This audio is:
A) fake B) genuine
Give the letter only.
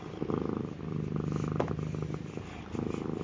B